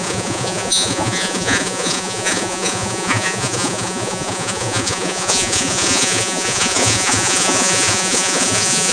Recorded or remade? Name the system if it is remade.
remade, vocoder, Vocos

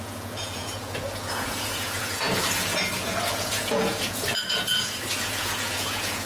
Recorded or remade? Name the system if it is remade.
remade, vocoder, Vocos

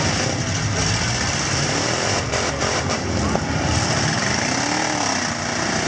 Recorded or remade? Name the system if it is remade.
recorded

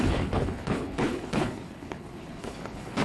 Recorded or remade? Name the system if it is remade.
remade, codec, HILCodec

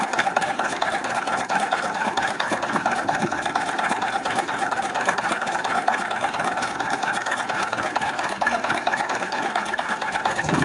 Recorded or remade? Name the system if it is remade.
remade, codec, SNAC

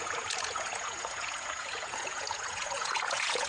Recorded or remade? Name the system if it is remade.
remade, vocoder, Vocos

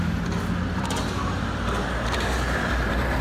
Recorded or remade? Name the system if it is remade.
recorded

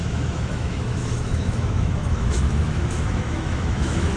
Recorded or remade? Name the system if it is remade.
remade, autoencoder, DAC-VAE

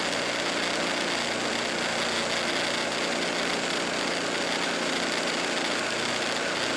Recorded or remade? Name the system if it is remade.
recorded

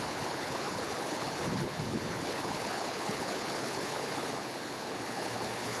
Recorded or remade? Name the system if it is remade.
remade, codec, HILCodec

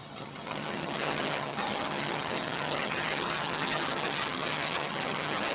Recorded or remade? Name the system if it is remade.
remade, vocoder, HiFi-GAN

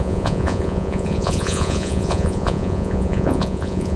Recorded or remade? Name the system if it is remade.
remade, vocoder, Vocos